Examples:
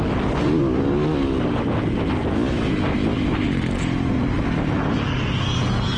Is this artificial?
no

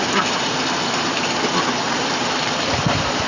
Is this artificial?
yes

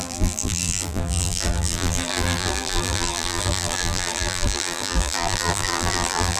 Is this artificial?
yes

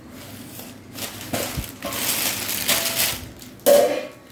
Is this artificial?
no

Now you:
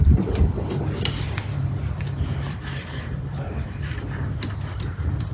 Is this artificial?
yes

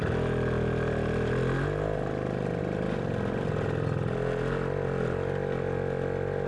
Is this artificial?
no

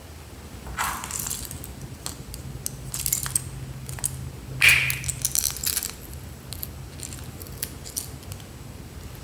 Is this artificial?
no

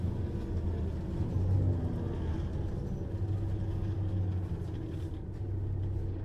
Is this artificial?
no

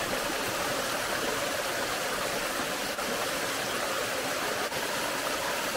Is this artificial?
no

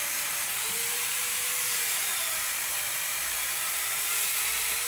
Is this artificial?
yes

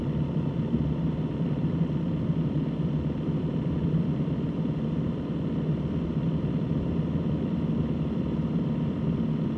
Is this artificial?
yes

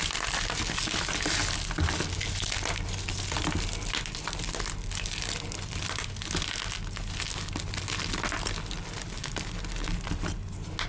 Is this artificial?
no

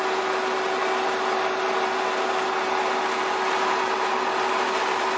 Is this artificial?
no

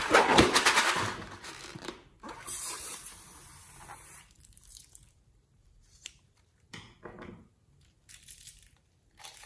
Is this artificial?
yes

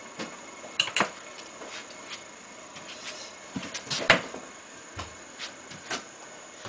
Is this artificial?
yes